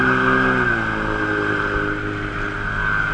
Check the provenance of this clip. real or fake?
real